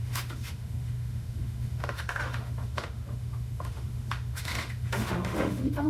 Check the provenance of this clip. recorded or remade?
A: remade